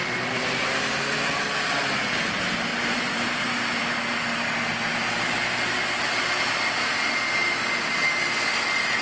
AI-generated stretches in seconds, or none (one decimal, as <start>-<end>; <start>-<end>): 0.0-1.6; 2.7-3.8; 4.9-6.9